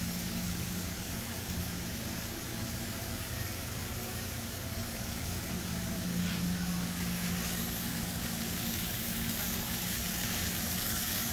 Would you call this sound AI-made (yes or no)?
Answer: yes